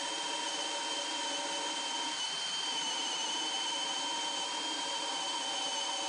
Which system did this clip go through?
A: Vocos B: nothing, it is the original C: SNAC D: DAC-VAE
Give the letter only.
B